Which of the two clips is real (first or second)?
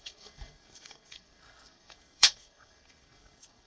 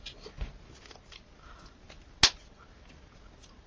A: second